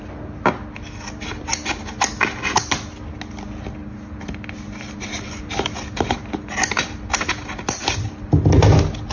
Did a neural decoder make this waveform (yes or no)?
no